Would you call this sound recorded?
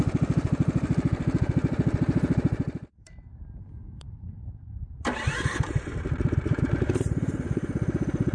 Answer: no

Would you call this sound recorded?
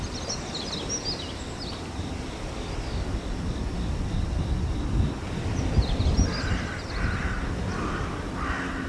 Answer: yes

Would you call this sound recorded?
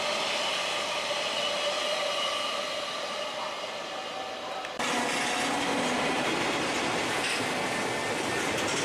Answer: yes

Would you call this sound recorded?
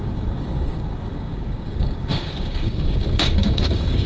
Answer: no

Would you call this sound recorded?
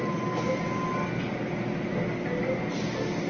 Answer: yes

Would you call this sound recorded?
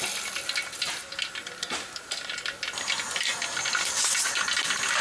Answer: yes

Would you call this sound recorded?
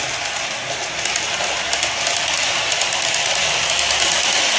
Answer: yes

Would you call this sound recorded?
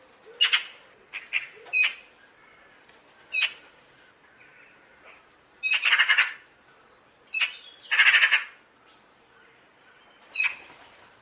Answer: yes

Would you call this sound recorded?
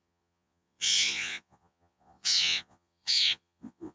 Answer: no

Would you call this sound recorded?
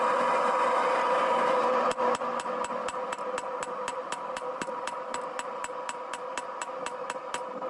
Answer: yes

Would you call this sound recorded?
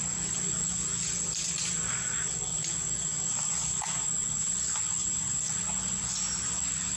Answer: yes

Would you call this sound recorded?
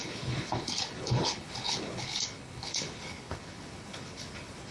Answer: no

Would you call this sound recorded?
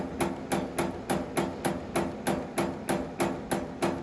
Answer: yes